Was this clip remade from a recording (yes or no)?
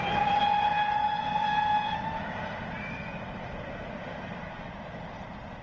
no